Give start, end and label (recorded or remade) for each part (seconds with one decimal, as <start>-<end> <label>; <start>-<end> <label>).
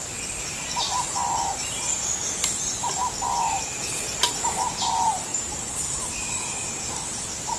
0.0-7.6 recorded